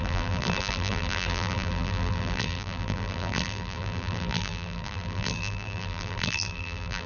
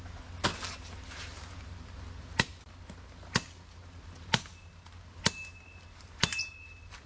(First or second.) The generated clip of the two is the first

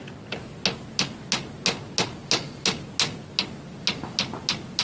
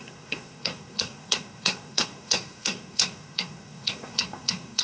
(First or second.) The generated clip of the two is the second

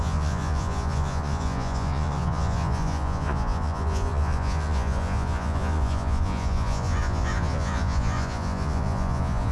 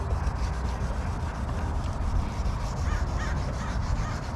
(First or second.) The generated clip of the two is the first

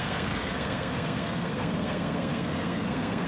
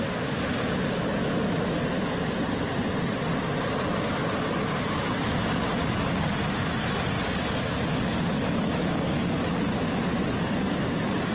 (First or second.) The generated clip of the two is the first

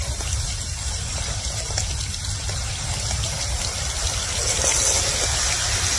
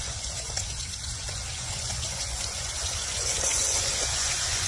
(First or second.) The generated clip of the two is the second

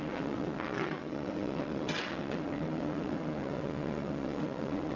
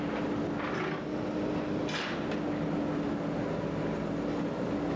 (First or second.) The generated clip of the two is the first